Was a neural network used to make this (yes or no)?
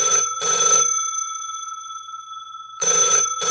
yes